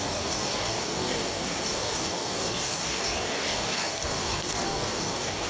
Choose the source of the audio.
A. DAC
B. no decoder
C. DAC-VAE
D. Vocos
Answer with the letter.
A